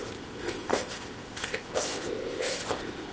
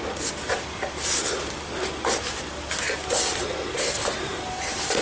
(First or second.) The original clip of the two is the second